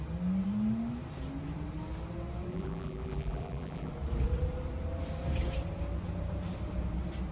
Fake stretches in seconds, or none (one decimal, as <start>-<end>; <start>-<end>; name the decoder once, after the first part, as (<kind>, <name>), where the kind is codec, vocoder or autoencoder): 2.5-3.9 (vocoder, BigVGAN v2)